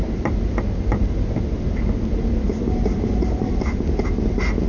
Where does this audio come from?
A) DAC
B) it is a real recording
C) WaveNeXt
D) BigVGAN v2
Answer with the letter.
B